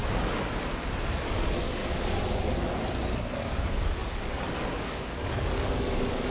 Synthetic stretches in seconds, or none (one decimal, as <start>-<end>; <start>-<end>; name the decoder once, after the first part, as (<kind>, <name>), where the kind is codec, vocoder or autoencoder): 0.7-1.8 (codec, DAC); 3.4-6.3